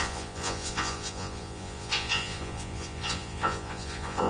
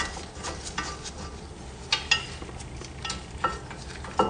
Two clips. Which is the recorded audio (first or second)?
second